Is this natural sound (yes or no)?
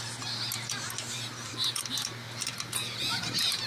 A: yes